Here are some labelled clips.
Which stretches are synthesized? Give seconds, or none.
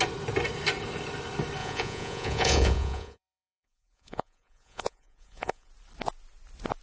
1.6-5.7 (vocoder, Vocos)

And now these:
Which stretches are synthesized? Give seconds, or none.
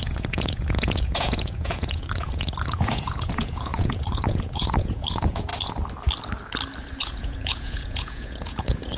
0.0-5.5 (vocoder, Vocos); 7.0-9.0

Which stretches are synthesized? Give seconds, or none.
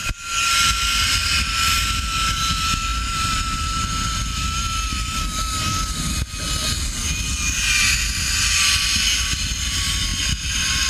none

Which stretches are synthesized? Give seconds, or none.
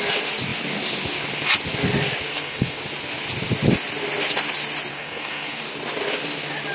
2.3-2.8 (codec, SNAC); 4.9-5.6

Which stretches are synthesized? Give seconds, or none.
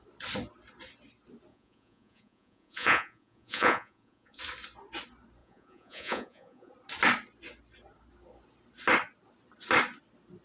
1.5-4.4 (vocoder, Vocos); 5.4-6.7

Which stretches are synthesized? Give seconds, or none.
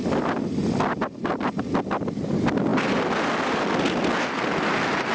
none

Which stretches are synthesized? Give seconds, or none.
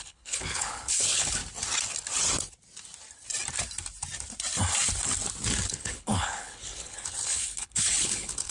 0.0-1.4 (codec, HILCodec); 5.7-8.5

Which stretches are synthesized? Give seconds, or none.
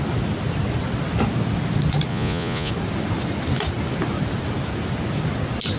2.1-2.7 (vocoder, Vocos)